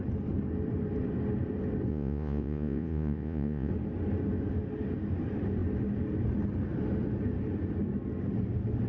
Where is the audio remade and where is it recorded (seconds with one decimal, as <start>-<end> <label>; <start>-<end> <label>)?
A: 0.0-1.9 recorded; 1.9-3.7 remade; 3.7-8.9 recorded